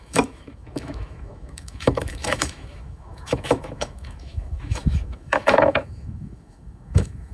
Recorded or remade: remade